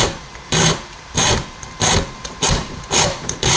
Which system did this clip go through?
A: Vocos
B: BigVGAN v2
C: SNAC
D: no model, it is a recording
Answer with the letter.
B